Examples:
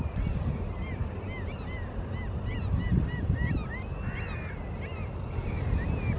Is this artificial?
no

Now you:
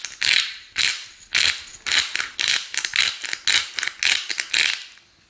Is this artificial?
no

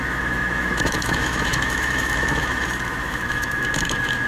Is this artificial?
yes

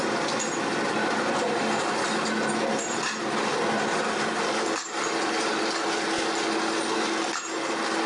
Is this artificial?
no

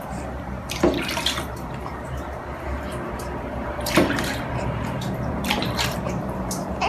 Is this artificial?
yes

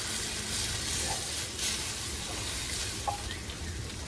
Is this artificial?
no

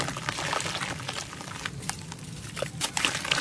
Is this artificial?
no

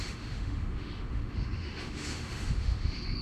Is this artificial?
yes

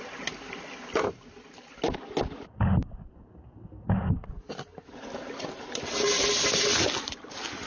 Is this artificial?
no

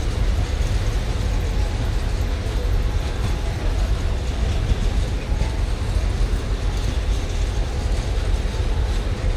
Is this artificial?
no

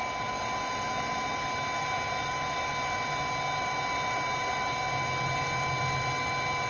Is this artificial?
no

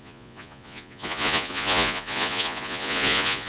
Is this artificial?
yes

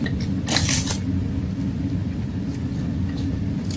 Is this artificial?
no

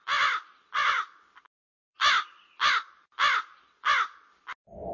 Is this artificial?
no